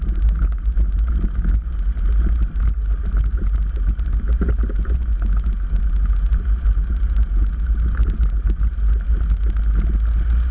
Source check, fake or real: real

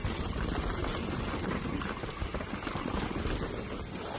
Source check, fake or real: real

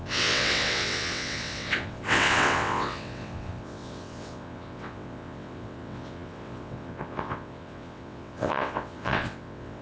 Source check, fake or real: fake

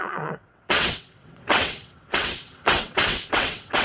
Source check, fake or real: fake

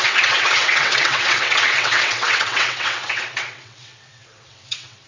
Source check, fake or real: fake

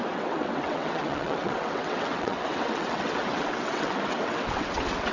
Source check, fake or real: fake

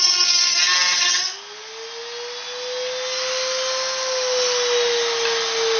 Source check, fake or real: real